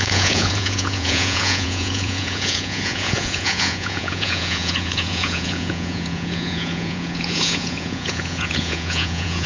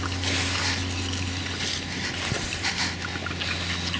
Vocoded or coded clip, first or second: first